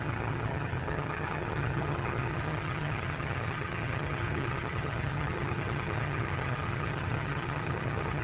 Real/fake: fake